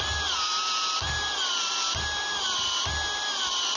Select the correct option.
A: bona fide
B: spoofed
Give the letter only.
A